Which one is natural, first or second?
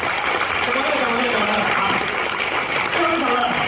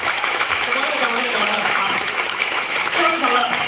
first